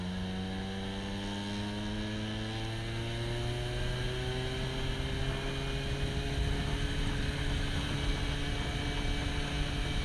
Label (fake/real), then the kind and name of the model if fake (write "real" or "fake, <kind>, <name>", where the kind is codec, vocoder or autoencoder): real